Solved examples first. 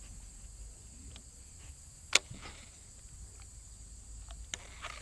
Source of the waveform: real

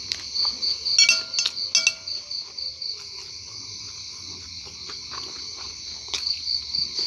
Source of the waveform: real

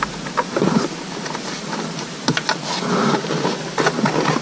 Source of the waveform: real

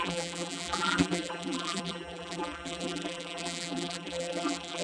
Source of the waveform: fake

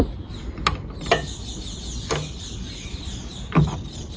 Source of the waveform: real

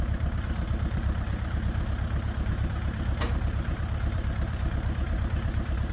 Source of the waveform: fake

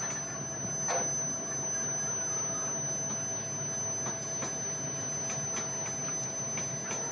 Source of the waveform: real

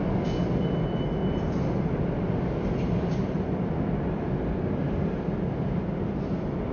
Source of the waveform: real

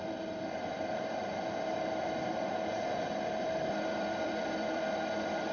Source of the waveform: fake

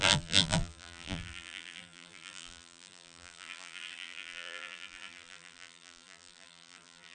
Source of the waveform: fake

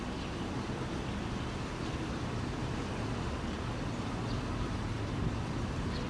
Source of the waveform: fake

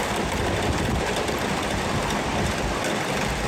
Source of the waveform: fake